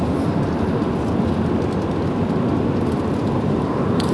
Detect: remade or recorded recorded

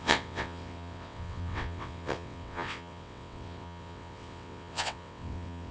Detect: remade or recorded remade